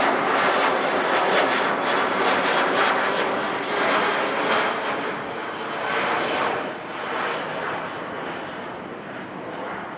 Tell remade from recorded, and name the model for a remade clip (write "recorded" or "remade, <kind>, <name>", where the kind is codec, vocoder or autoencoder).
recorded